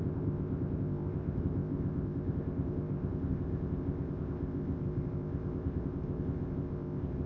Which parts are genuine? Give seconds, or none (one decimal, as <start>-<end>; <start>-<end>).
none